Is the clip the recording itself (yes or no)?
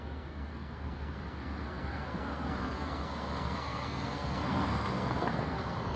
no